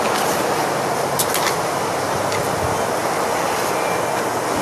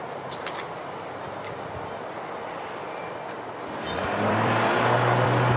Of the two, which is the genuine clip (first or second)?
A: first